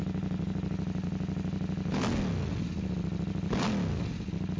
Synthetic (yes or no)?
no